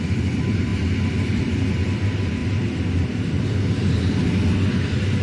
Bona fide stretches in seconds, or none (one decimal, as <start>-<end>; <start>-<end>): 0.0-5.2